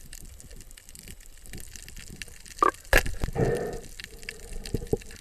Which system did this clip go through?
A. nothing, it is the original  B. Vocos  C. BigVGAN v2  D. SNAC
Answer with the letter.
A